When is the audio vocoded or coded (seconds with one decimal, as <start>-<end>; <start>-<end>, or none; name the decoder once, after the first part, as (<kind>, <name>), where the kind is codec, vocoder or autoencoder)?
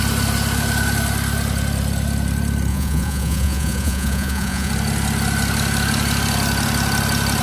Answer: 2.7-4.7 (vocoder, Vocos)